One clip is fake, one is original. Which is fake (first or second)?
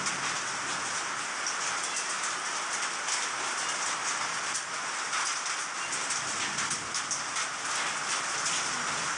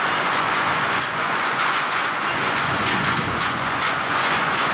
second